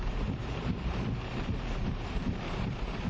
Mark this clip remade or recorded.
remade